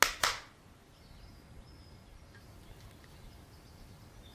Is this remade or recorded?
recorded